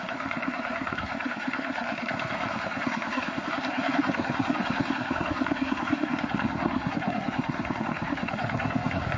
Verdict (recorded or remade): remade